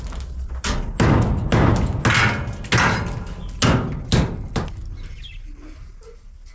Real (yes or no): yes